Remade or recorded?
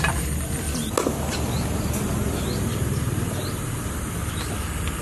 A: recorded